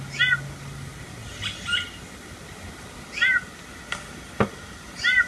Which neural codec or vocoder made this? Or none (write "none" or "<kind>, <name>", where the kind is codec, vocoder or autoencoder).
none